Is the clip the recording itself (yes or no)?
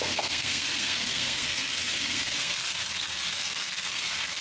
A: no